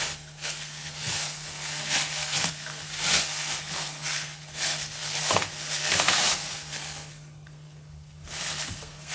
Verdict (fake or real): fake